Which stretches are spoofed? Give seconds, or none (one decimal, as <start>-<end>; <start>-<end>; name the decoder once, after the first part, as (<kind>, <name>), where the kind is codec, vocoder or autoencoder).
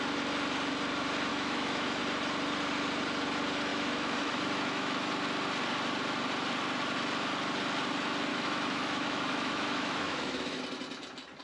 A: 1.3-2.0 (autoencoder, DAC-VAE); 3.7-5.1; 8.3-10.6